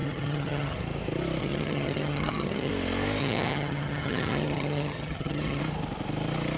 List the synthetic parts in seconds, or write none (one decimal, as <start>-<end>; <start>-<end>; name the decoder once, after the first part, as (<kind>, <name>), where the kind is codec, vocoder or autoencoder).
0.0-0.8 (vocoder, HiFi-GAN); 1.4-2.7; 3.2-5.6